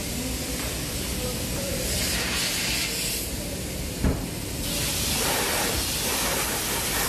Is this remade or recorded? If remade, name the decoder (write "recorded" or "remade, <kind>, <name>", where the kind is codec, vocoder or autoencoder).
recorded